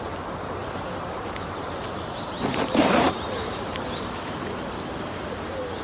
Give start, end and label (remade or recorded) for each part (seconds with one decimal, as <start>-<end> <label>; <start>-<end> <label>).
0.0-0.6 recorded; 0.6-4.1 remade; 4.1-5.8 recorded